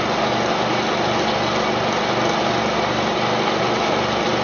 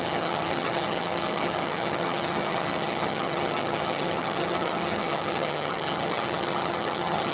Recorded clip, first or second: first